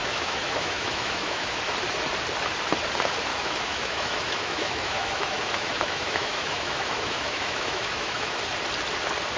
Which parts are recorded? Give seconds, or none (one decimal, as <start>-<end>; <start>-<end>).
1.6-3.3; 8.4-9.4